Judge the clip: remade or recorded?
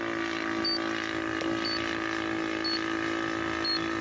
recorded